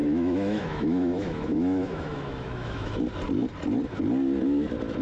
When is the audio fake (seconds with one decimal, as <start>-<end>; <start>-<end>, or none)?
0.0-3.0